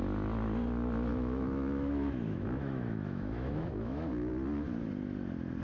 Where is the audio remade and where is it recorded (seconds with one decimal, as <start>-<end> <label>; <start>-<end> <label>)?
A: 0.0-1.1 recorded; 1.1-4.3 remade; 4.3-5.6 recorded